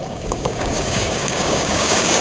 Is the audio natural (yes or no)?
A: no